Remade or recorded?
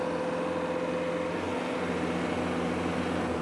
recorded